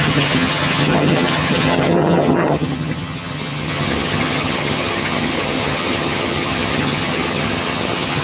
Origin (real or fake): fake